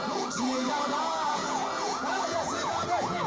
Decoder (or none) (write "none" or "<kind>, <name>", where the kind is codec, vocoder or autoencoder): vocoder, Vocos